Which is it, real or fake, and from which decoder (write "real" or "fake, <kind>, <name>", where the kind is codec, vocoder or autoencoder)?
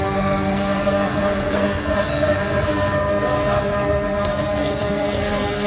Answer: fake, codec, SNAC